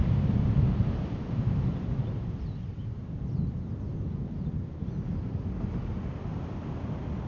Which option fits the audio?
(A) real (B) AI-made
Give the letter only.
A